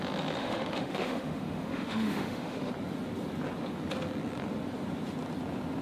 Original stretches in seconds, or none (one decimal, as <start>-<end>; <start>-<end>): 0.0-0.4; 2.7-5.8